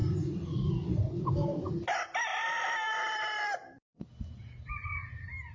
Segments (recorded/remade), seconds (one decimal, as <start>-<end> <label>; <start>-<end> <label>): 0.0-2.3 recorded; 2.3-4.7 remade; 4.7-5.5 recorded